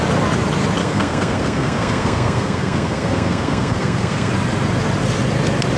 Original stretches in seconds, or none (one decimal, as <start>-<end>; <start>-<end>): 0.0-0.8; 4.3-5.8